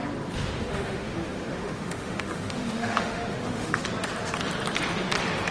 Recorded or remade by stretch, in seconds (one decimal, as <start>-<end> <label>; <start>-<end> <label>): 0.0-0.6 recorded; 0.6-3.8 remade; 3.8-5.5 recorded